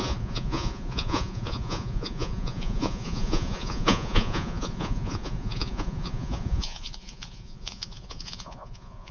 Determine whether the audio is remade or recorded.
remade